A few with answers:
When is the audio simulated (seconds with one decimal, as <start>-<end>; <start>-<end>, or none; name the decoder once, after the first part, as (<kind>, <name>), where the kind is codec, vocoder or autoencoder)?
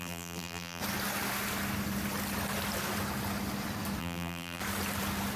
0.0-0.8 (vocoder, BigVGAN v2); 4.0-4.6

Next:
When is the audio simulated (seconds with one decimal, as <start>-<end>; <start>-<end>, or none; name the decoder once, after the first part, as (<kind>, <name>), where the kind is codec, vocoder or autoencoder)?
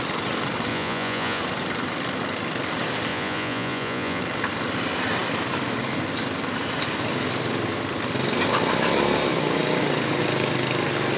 0.7-1.4 (vocoder, Vocos); 3.1-4.2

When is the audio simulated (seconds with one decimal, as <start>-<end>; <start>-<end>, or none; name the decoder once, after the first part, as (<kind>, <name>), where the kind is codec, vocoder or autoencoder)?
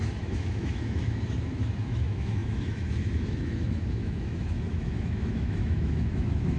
0.0-6.6 (autoencoder, DAC-VAE)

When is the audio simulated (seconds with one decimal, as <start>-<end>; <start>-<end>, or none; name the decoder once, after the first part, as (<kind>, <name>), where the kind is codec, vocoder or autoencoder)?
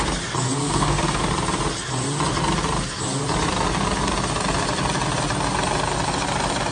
0.6-1.2 (codec, SNAC)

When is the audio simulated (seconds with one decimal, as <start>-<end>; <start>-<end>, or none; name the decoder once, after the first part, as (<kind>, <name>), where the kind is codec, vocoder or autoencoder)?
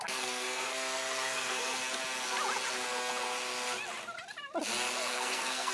0.0-1.7 (codec, SNAC); 5.1-5.7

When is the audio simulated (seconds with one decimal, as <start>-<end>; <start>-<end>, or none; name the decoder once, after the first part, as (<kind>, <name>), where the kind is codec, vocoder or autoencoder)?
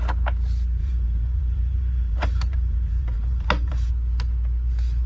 0.8-3.9 (vocoder, BigVGAN v2)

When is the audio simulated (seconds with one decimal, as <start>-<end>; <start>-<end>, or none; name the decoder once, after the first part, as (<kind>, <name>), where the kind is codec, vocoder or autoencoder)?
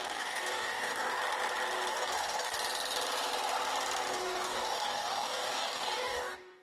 0.0-1.2 (codec, DAC); 1.9-2.5; 4.1-6.6